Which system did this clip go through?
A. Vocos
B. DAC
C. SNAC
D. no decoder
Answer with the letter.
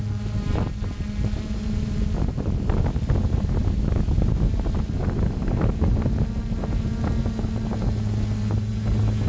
D